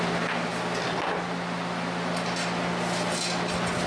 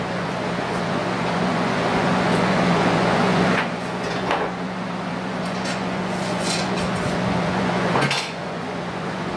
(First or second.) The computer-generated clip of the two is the second